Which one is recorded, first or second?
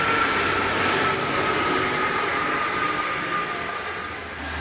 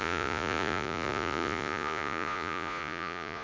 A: first